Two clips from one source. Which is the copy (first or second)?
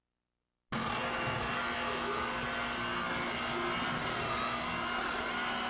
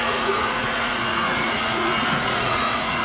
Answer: second